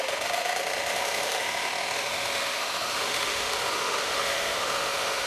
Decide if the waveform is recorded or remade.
remade